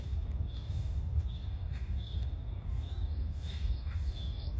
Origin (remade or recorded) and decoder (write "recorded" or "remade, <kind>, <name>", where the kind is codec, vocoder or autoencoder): remade, codec, DAC